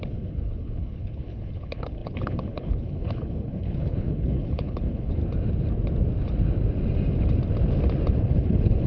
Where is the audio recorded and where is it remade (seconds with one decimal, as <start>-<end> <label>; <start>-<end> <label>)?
0.0-5.2 remade; 5.2-8.2 recorded; 8.2-8.9 remade